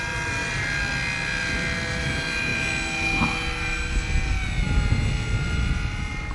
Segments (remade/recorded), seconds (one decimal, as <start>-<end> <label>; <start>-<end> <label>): 0.0-6.3 recorded